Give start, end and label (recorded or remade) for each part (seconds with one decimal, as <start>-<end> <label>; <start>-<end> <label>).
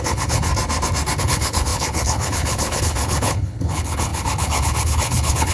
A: 0.0-0.5 remade; 0.5-1.2 recorded; 1.2-5.5 remade